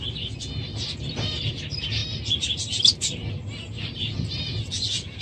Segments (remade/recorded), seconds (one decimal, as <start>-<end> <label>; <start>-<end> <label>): 0.0-5.2 recorded